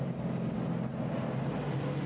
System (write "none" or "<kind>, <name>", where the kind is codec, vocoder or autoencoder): none